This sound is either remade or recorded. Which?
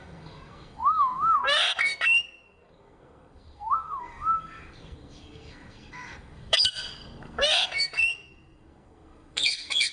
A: remade